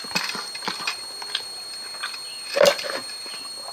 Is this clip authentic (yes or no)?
no